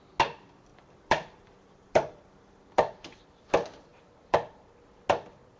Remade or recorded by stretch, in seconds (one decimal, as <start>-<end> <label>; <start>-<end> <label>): 0.0-0.7 recorded; 0.7-3.5 remade; 3.5-3.9 recorded; 3.9-4.7 remade; 4.7-5.6 recorded